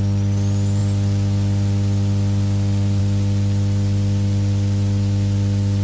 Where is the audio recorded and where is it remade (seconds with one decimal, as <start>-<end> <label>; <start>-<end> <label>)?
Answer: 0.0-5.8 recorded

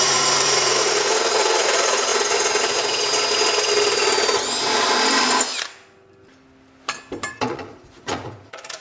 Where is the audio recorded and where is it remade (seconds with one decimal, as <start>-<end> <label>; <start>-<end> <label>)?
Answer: 0.0-2.1 remade; 2.1-7.3 recorded; 7.3-8.8 remade

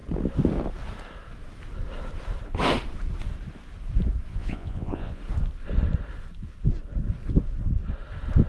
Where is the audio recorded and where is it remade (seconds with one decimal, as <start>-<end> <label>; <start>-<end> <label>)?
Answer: 0.0-4.3 recorded; 4.3-5.2 remade; 5.2-8.5 recorded

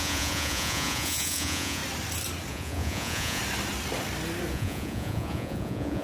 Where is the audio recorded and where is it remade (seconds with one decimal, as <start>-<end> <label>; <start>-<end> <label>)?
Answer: 0.0-1.8 remade; 1.8-2.5 recorded; 2.5-3.4 remade; 3.4-4.5 recorded; 4.5-6.0 remade